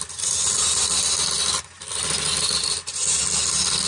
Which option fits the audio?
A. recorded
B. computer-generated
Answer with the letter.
A